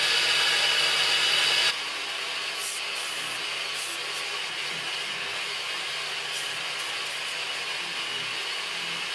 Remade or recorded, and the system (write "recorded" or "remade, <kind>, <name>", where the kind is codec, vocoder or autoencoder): recorded